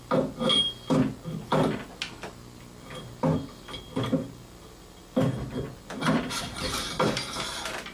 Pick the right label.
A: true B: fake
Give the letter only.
A